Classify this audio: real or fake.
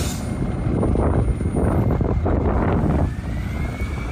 real